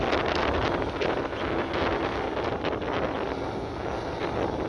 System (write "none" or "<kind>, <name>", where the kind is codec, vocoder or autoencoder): none